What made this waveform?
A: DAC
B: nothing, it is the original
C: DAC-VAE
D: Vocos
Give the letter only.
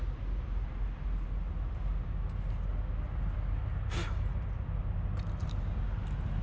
B